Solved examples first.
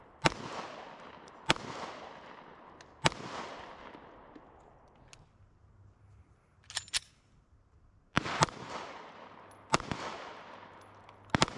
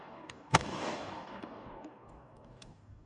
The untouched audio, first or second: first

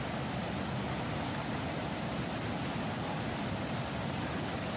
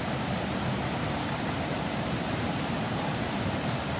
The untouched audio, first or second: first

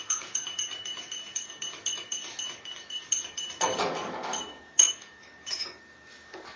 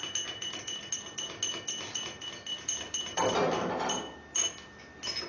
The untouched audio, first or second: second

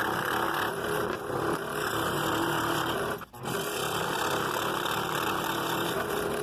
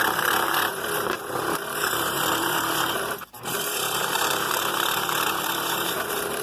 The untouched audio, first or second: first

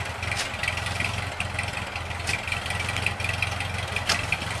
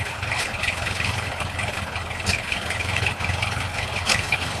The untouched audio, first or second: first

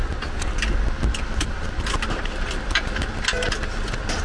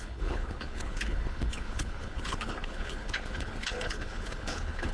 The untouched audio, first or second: first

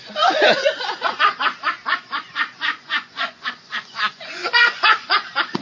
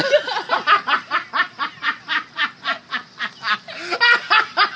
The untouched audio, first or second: second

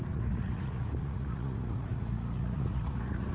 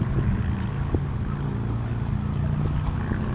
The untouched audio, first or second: second